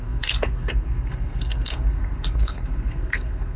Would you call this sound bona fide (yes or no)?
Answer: no